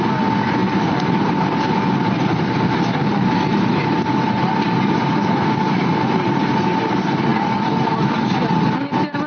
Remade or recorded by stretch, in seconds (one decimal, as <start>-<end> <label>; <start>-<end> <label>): 0.0-0.6 recorded; 0.6-4.6 remade; 4.6-7.3 recorded; 7.3-8.5 remade; 8.5-9.3 recorded